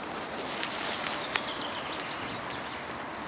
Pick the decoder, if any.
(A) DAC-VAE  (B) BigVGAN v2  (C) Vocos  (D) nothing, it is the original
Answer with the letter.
D